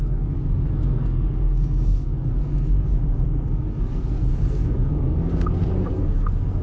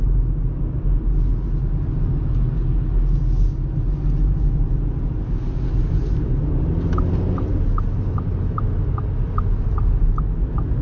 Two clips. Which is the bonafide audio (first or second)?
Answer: second